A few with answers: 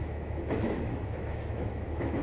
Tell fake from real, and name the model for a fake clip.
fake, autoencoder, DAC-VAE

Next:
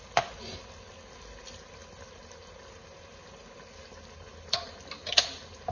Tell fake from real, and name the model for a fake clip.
real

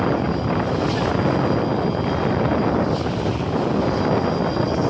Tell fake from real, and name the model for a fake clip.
real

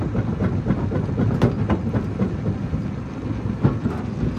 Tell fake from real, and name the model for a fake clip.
real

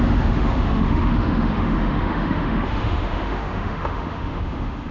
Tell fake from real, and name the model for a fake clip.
fake, autoencoder, DAC-VAE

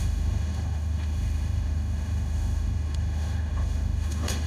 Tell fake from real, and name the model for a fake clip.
fake, autoencoder, DAC-VAE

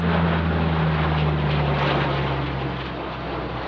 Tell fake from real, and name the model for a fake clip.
real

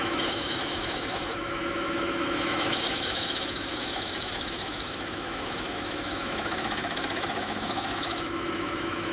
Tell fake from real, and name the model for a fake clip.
fake, autoencoder, DAC-VAE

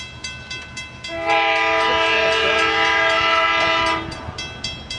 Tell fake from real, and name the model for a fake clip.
real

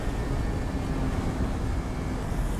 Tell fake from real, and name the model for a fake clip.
real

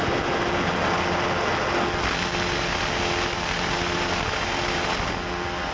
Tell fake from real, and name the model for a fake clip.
real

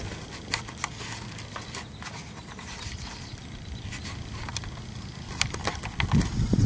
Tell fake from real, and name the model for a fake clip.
real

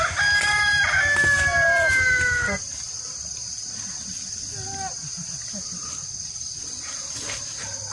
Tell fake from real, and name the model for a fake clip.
real